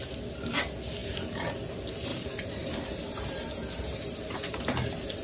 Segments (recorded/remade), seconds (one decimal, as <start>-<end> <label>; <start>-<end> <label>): 0.0-1.0 recorded; 1.0-1.6 remade; 1.6-2.1 recorded; 2.1-4.6 remade; 4.6-5.2 recorded

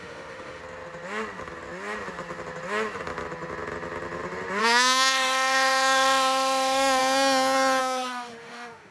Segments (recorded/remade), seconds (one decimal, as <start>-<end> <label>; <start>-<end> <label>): 0.0-0.6 remade; 0.6-4.6 recorded; 4.6-7.0 remade; 7.0-7.8 recorded; 7.8-8.9 remade

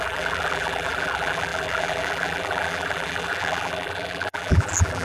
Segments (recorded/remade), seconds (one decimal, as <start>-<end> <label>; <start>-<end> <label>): 0.0-5.0 remade

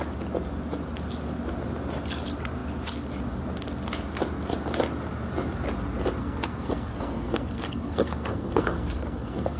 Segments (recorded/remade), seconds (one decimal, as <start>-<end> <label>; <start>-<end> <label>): 0.0-6.2 recorded; 6.2-9.6 remade

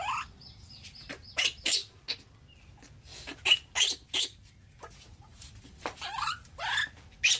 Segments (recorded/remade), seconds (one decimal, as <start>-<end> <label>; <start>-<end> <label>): 0.0-3.1 recorded; 3.1-3.7 remade; 3.7-5.3 recorded; 5.3-6.6 remade; 6.6-7.4 recorded

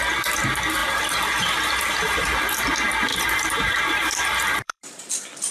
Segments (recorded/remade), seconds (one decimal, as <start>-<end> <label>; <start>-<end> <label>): 0.0-3.1 recorded; 3.1-5.1 remade; 5.1-5.5 recorded

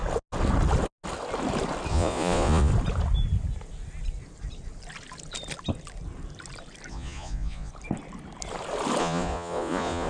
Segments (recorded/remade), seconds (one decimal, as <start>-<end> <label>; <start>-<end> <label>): 0.0-1.9 recorded; 1.9-2.7 remade; 2.7-6.9 recorded; 6.9-7.7 remade; 7.7-9.0 recorded; 9.0-10.1 remade